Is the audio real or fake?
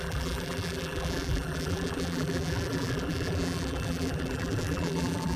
fake